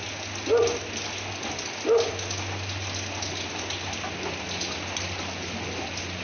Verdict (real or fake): real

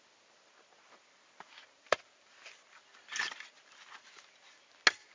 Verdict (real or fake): real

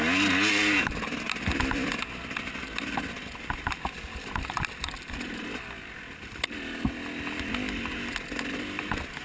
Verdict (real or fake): real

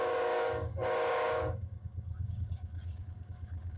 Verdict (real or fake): fake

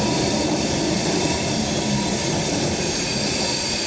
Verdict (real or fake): real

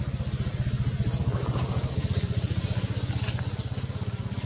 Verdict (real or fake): real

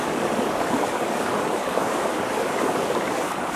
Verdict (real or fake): fake